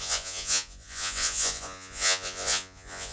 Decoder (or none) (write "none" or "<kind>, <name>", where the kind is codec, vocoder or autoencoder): vocoder, Vocos